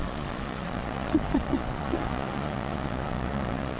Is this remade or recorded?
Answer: remade